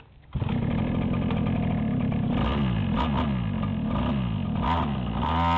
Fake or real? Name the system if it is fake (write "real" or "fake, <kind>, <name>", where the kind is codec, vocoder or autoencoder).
real